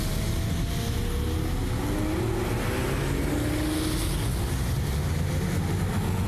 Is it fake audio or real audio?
real